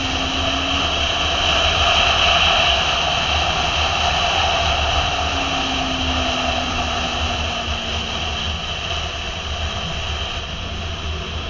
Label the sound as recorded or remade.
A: recorded